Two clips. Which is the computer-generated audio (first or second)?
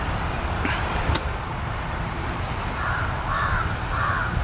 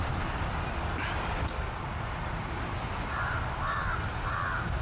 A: first